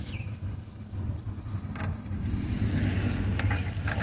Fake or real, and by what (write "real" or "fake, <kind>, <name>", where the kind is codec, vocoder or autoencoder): real